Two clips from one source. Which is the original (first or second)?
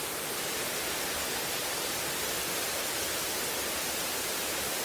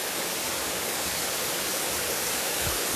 first